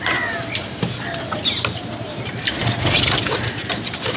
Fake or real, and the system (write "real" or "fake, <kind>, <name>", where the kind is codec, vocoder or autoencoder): real